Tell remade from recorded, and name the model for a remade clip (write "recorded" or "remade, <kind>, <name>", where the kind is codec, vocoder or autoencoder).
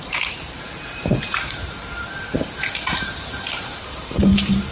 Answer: remade, vocoder, BigVGAN v2